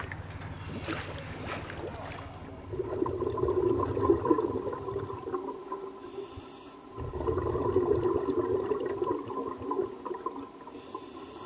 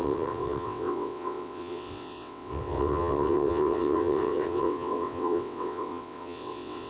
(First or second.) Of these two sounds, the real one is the first